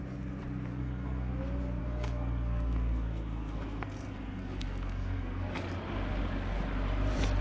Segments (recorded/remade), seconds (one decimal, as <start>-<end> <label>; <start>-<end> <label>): 0.0-0.7 recorded; 0.7-1.3 remade; 1.3-1.8 recorded; 1.8-5.6 remade; 5.6-7.4 recorded